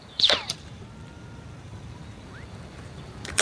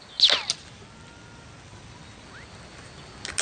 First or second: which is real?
second